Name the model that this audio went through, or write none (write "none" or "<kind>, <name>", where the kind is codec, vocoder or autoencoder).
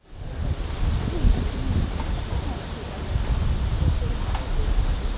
none